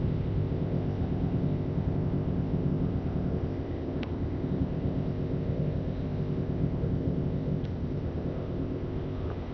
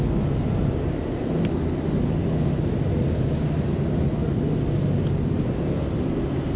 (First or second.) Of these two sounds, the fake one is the first